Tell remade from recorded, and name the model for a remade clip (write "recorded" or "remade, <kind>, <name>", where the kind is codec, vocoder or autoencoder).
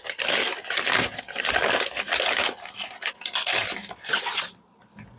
recorded